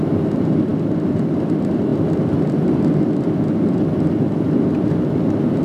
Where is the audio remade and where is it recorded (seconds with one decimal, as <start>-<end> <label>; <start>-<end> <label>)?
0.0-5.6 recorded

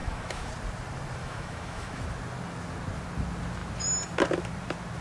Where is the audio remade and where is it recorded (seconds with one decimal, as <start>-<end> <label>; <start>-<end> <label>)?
0.0-0.5 remade; 0.5-1.2 recorded; 1.2-2.0 remade; 2.0-5.0 recorded

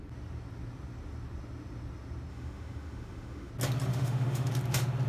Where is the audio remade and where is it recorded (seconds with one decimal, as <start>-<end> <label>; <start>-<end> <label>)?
0.0-2.3 recorded; 2.3-3.5 remade; 3.5-3.9 recorded; 3.9-4.5 remade; 4.5-5.1 recorded

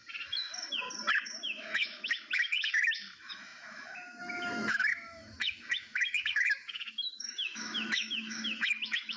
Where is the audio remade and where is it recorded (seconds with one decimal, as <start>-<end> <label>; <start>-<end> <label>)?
0.0-1.1 recorded; 1.1-9.2 remade

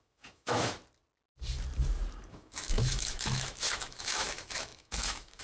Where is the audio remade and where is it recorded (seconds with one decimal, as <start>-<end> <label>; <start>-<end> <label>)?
0.0-0.8 remade; 0.8-2.3 recorded; 2.3-5.4 remade

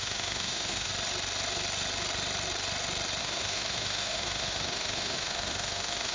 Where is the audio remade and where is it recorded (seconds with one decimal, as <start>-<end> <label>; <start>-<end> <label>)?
0.0-0.9 remade; 0.9-3.2 recorded; 3.2-6.1 remade

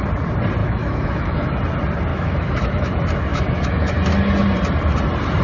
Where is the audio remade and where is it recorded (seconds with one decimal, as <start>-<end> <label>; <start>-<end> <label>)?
0.0-0.6 recorded; 0.6-1.5 remade; 1.5-2.1 recorded; 2.1-2.9 remade; 2.9-3.3 recorded; 3.3-3.9 remade; 3.9-5.4 recorded